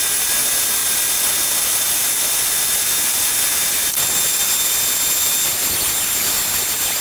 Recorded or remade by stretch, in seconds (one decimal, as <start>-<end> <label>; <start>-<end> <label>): 0.0-7.0 recorded